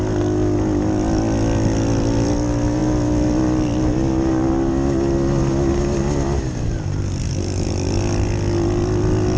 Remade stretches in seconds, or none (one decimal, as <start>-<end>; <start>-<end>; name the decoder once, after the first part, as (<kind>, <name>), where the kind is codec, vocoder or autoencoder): none